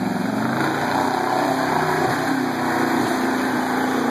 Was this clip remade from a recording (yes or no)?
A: no